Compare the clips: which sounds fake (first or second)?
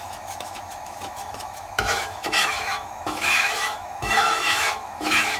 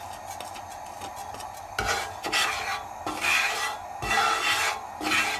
first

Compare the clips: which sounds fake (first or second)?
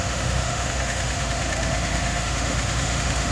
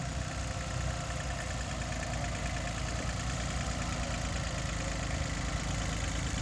first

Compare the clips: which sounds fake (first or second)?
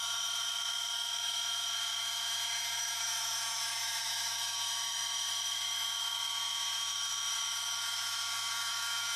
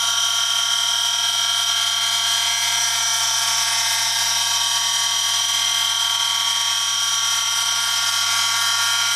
first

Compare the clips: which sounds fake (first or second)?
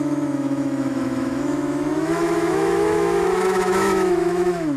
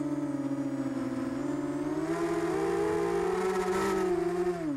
first